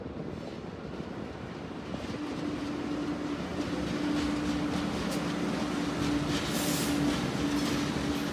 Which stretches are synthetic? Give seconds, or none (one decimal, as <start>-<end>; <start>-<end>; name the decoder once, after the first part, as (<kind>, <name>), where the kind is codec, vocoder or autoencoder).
none